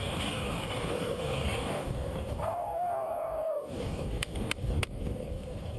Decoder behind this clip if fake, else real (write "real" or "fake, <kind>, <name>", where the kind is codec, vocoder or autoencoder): fake, codec, DAC